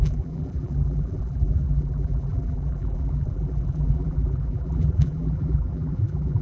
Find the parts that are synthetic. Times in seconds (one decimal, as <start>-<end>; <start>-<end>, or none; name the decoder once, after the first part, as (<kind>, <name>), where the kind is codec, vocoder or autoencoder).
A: 0.0-6.4 (vocoder, BigVGAN v2)